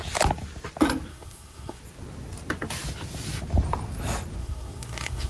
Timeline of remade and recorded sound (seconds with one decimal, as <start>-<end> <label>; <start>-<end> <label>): 0.0-1.1 recorded; 1.1-1.8 remade; 1.8-4.4 recorded; 4.4-5.3 remade